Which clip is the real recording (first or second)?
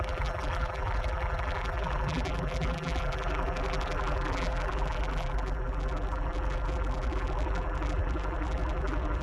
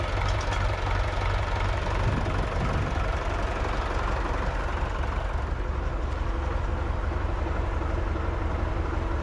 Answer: second